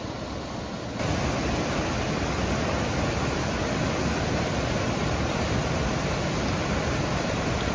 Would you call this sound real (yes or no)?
yes